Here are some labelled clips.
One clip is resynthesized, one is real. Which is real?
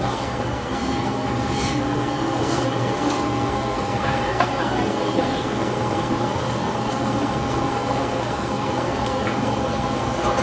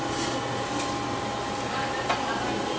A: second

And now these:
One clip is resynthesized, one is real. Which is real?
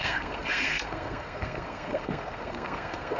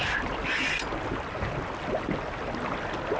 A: second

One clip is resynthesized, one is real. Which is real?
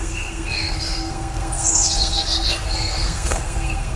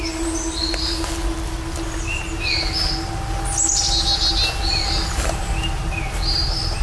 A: second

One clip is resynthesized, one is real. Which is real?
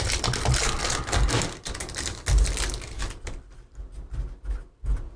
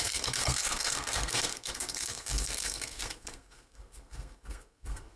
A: first